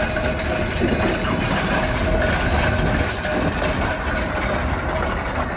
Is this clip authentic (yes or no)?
yes